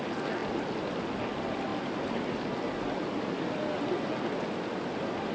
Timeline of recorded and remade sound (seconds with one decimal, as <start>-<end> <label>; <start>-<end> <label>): 0.0-5.3 recorded